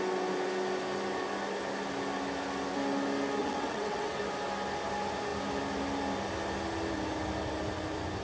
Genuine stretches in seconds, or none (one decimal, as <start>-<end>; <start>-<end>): 0.0-3.4; 4.2-8.2